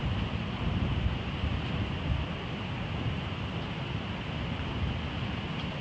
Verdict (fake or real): real